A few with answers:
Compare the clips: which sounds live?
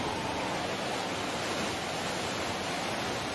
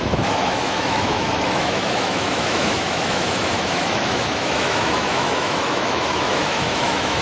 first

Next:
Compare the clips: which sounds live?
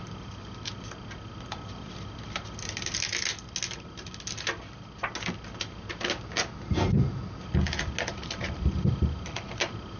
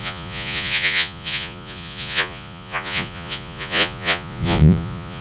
first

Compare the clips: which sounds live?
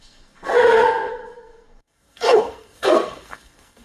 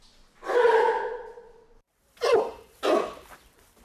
second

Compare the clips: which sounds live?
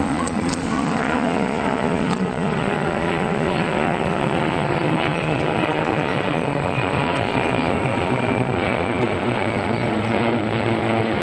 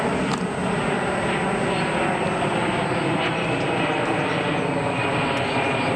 second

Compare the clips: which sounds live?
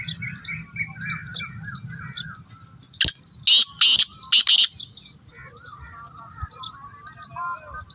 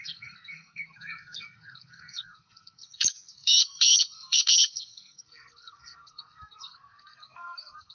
first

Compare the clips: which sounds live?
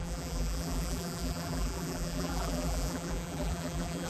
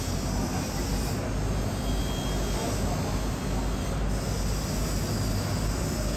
second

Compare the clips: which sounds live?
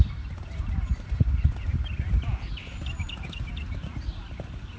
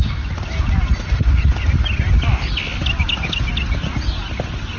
second